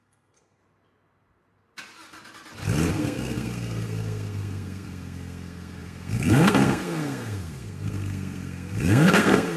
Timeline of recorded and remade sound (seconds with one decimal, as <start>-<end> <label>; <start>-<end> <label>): 0.0-0.6 remade; 0.6-2.9 recorded; 2.9-9.6 remade